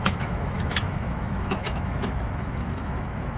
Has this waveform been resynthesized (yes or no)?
yes